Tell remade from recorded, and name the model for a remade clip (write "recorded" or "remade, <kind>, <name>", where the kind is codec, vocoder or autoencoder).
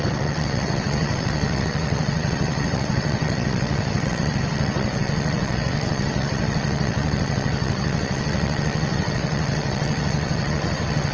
remade, vocoder, WaveNeXt